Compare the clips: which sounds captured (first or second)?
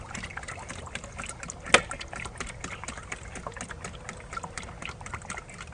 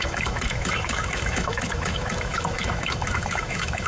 first